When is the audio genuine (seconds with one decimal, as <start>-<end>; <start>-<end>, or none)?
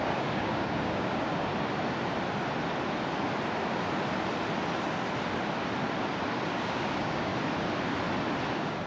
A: 1.5-6.5; 7.3-8.5